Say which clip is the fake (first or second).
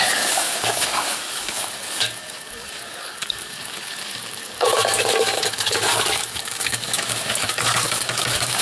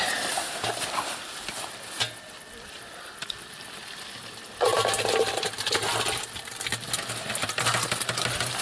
first